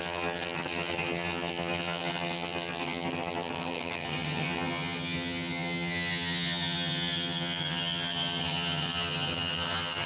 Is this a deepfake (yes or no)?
yes